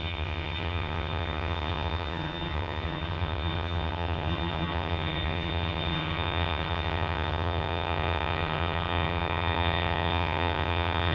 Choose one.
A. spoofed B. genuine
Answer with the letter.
A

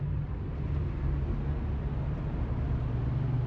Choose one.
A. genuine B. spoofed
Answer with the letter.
A